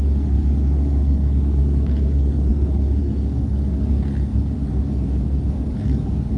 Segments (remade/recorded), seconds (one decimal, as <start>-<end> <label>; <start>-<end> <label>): 0.0-6.4 remade